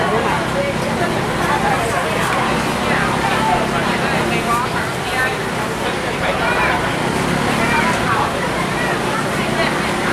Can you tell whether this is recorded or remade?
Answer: recorded